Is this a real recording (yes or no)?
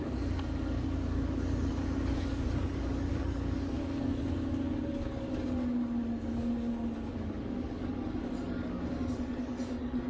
no